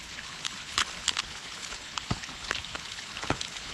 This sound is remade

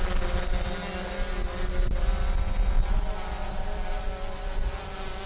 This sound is recorded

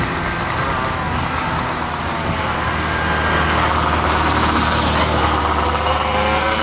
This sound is recorded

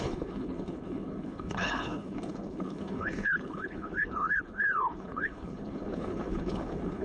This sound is remade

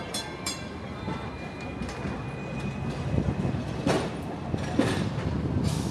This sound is recorded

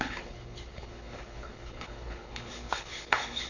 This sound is remade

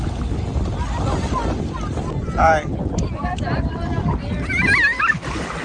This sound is recorded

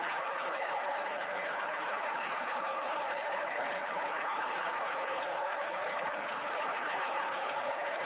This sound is remade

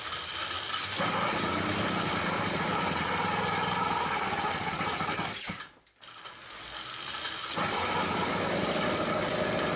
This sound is recorded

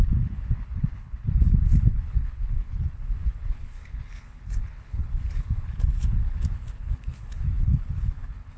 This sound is remade